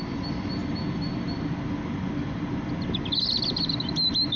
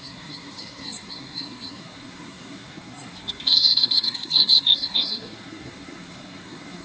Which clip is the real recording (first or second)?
first